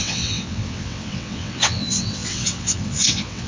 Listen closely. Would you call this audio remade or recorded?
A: remade